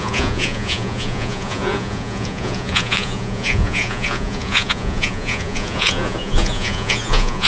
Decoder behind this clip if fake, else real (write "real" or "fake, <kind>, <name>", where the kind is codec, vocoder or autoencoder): fake, vocoder, Vocos